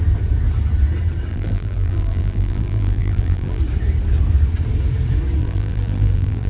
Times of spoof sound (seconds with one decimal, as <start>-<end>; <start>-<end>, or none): 1.3-3.6; 5.4-6.5